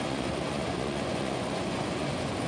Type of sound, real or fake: fake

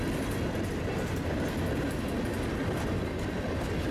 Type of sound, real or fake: real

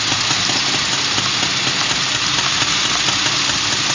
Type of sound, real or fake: real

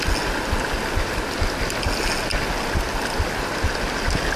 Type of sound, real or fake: real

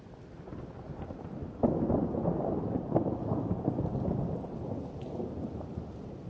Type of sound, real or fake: real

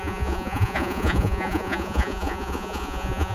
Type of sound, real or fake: fake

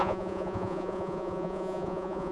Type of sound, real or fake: fake